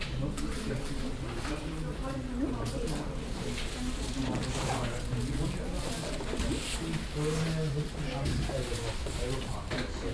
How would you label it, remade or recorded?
recorded